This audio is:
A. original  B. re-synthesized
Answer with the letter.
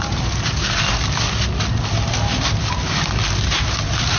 A